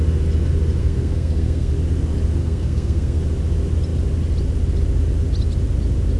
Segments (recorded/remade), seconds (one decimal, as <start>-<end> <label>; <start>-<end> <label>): 0.0-0.8 recorded; 0.8-1.7 remade; 1.7-2.4 recorded; 2.4-3.2 remade; 3.2-6.2 recorded